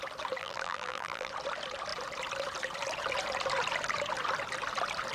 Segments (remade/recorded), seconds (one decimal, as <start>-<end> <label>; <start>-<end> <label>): 0.0-0.4 recorded; 0.4-1.3 remade; 1.3-5.1 recorded